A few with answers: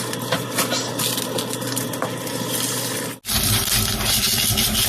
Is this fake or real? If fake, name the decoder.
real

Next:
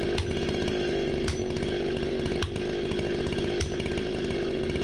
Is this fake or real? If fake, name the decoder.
real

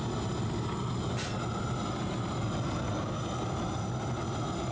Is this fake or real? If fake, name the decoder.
real